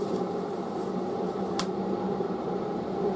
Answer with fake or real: fake